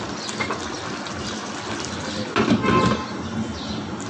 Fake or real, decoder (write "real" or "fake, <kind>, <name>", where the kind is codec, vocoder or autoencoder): real